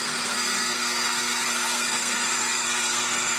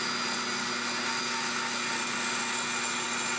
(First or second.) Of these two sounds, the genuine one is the second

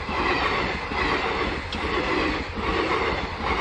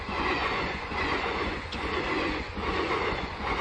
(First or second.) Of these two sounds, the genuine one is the first